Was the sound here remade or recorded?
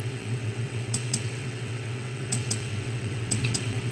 remade